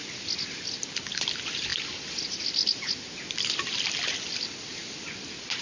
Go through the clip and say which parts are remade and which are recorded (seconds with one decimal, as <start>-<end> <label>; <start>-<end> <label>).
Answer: 0.0-5.6 recorded